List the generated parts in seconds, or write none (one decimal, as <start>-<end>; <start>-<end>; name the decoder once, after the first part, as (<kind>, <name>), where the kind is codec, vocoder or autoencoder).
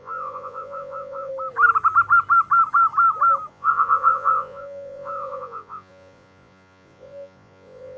0.0-1.3 (vocoder, Vocos); 3.5-8.0